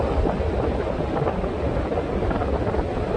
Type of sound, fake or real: real